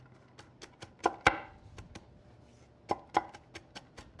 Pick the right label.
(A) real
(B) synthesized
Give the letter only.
A